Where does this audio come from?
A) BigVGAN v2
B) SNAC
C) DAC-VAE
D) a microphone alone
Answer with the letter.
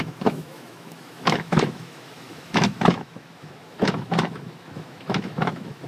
C